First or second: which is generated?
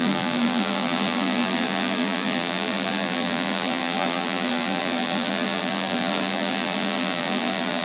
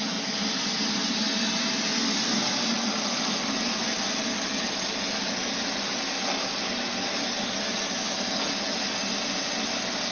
first